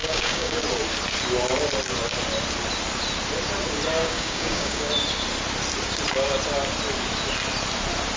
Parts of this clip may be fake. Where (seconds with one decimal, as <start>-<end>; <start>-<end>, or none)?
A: 0.0-0.6; 4.0-4.9